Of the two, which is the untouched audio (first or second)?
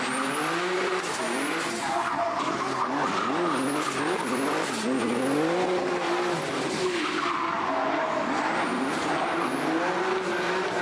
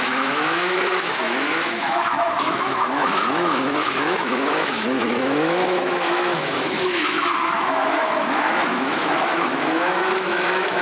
first